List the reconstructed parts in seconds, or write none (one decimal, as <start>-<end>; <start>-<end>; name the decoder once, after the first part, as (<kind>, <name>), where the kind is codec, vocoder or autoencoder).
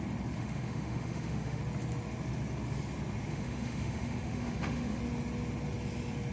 0.4-1.6 (autoencoder, DAC-VAE); 3.3-5.0